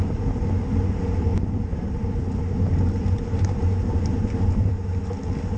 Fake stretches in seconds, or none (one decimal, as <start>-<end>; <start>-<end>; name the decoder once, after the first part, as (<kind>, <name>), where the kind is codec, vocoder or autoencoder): 1.3-4.7 (vocoder, BigVGAN v2)